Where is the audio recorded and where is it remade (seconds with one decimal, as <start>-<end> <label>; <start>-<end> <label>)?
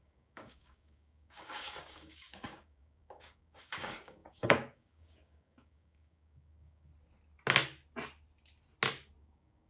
0.0-6.9 remade; 6.9-9.2 recorded; 9.2-9.7 remade